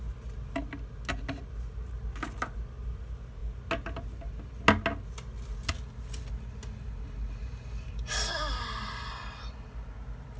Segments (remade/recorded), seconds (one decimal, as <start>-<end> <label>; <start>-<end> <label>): 0.0-10.4 recorded